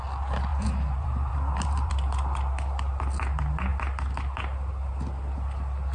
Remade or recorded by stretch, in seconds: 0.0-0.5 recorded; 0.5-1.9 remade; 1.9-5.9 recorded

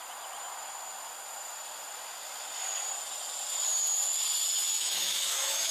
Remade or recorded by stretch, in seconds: 0.0-4.7 recorded; 4.7-5.7 remade